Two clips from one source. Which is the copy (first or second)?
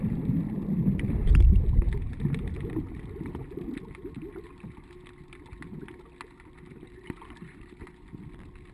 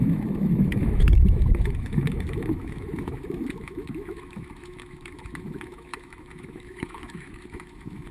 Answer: second